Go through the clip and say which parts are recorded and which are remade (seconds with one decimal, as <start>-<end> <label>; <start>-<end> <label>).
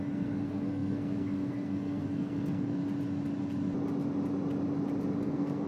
0.0-2.8 remade; 2.8-5.2 recorded; 5.2-5.7 remade